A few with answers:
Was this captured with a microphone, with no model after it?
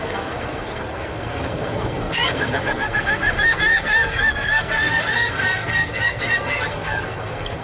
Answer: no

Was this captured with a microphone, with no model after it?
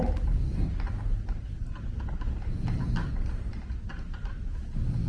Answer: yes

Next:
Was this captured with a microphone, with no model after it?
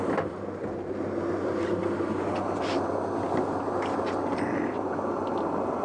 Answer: yes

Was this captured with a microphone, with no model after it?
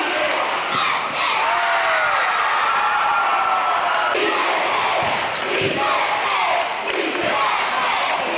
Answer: yes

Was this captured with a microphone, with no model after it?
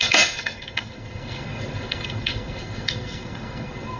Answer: no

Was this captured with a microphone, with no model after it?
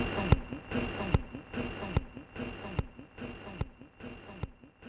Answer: yes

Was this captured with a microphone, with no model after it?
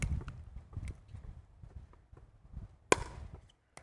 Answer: yes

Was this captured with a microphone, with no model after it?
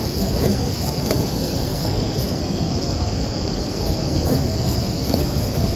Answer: no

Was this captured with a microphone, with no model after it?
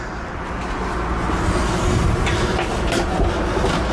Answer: yes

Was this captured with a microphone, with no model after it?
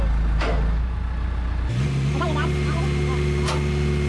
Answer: yes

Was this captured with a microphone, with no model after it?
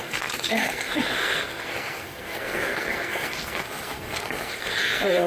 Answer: no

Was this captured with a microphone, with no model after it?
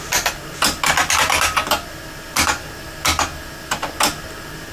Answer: yes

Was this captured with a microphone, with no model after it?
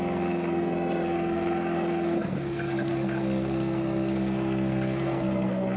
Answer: no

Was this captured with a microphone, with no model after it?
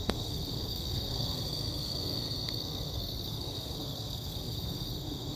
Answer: no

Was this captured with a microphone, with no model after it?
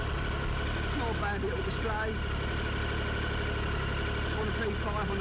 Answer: yes